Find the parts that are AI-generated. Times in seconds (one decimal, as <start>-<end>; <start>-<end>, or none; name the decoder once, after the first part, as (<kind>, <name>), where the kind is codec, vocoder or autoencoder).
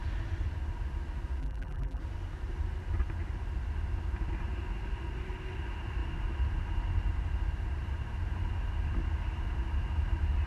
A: 1.4-2.0 (vocoder, BigVGAN v2)